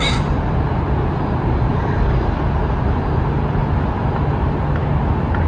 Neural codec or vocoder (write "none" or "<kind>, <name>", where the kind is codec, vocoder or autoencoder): none